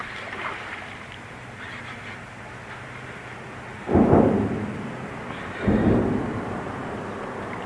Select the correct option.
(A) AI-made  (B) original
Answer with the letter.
B